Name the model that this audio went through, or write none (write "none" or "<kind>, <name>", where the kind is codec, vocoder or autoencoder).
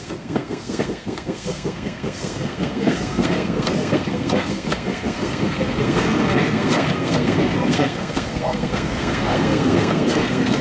codec, SNAC